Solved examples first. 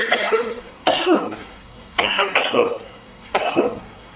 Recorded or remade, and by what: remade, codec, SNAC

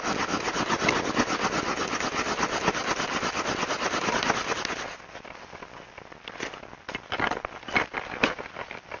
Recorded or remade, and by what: recorded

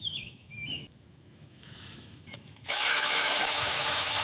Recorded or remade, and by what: remade, autoencoder, DAC-VAE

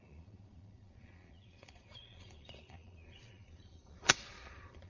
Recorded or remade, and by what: remade, vocoder, Vocos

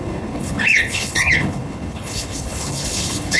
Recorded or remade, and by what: remade, codec, HILCodec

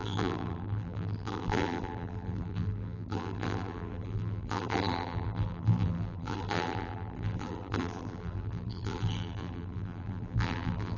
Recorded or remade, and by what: remade, vocoder, BigVGAN v2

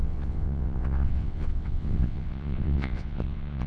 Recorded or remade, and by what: remade, vocoder, WaveNeXt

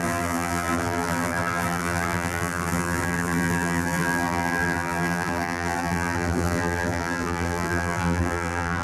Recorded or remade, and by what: remade, vocoder, BigVGAN v2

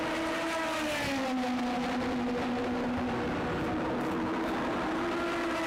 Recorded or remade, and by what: recorded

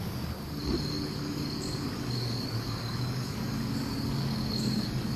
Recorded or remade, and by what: remade, codec, DAC